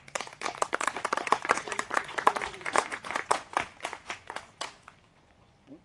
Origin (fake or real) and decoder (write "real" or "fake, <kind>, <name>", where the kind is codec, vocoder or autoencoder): fake, vocoder, Vocos